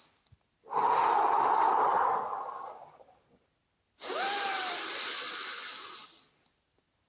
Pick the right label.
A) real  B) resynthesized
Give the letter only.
A